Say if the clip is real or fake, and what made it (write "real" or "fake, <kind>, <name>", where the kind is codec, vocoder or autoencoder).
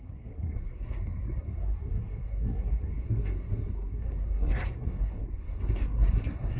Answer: fake, codec, SNAC